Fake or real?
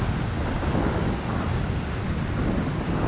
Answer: real